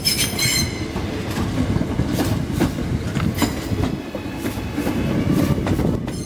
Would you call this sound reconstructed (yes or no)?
no